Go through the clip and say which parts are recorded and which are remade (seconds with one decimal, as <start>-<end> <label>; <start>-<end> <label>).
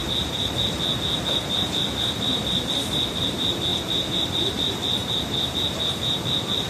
0.0-6.7 remade